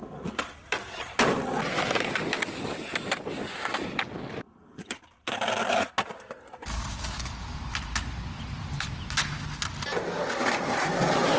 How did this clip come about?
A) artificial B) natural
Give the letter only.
B